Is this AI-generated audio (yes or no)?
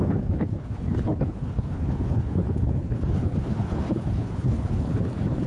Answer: yes